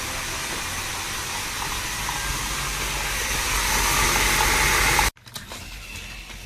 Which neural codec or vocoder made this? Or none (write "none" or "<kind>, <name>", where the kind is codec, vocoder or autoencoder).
none